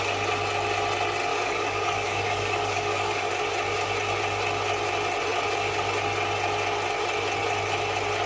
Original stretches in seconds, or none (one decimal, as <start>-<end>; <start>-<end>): 0.0-1.3; 3.3-8.3